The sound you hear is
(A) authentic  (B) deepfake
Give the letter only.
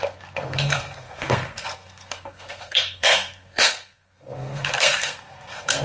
B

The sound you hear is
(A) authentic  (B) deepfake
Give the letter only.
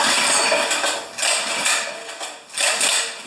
A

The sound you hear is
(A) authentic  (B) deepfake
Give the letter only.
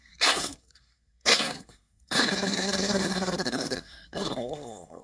B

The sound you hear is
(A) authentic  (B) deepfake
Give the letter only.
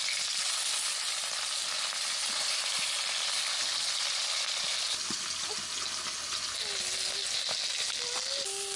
A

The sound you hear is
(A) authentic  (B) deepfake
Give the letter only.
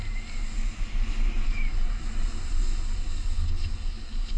A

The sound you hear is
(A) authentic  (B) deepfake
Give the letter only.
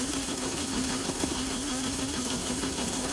B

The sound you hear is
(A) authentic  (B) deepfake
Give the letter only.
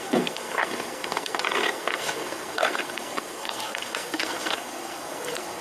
B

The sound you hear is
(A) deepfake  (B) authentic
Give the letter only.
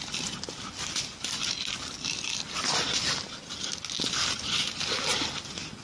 B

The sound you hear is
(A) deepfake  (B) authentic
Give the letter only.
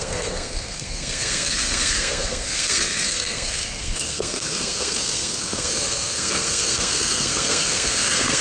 A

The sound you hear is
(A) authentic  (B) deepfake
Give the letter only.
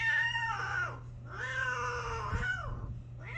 A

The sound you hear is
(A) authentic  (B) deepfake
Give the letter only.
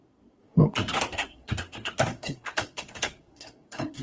B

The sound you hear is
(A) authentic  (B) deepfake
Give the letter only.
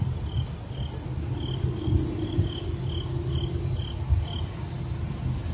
A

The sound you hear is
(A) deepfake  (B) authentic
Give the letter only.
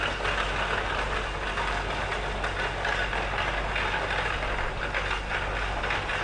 B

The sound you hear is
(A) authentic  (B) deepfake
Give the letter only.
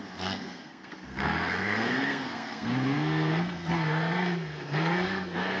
B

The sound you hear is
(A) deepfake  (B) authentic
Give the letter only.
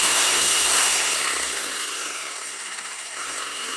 A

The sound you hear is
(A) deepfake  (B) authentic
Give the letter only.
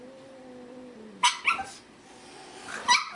B